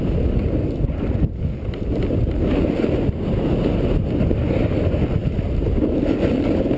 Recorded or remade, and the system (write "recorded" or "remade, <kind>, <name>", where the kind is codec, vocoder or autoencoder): recorded